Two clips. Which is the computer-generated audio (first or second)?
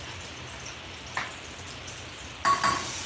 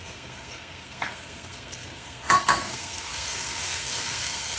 second